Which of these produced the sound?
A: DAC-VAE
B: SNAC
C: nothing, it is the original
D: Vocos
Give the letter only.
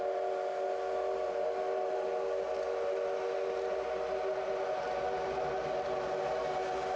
C